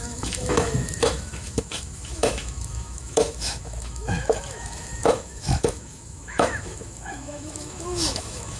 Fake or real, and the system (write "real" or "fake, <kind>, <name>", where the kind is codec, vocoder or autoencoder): fake, autoencoder, DAC-VAE